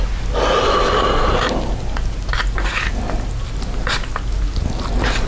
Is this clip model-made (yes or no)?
no